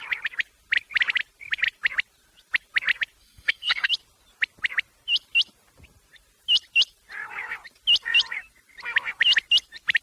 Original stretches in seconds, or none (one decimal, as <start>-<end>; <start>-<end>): 0.0-3.2; 3.9-10.0